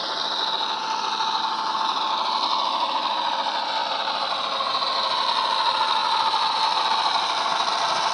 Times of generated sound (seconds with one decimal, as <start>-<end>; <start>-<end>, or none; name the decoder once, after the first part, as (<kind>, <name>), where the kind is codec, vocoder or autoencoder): none